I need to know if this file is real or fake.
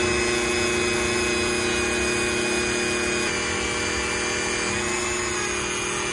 real